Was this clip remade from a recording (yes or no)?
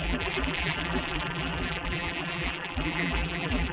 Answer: yes